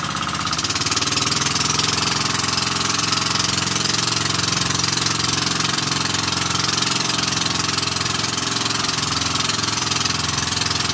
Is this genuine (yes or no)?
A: no